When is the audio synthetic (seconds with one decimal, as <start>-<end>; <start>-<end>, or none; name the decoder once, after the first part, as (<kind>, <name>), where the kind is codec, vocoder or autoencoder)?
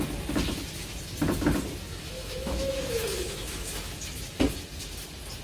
1.9-4.4 (autoencoder, DAC-VAE)